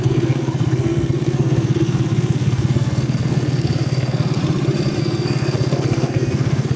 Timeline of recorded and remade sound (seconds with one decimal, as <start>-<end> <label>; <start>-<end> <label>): 0.0-4.4 remade; 4.4-5.0 recorded; 5.0-6.8 remade